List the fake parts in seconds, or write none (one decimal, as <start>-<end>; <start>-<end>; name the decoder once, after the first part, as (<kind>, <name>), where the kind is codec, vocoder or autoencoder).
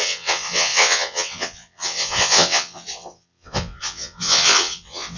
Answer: 0.0-5.2 (vocoder, WaveNeXt)